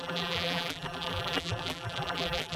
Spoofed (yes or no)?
yes